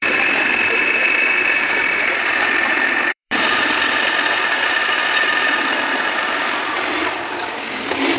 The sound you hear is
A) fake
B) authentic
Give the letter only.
A